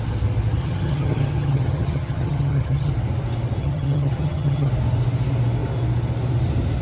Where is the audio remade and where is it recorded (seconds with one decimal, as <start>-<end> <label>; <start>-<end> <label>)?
0.0-0.6 recorded; 0.6-2.9 remade; 2.9-3.6 recorded; 3.6-4.7 remade; 4.7-6.8 recorded